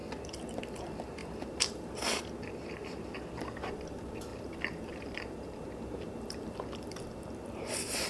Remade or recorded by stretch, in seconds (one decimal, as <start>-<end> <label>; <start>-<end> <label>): 0.0-0.6 recorded; 0.6-8.1 remade